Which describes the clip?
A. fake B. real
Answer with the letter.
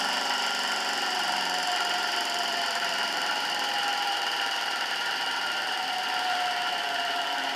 A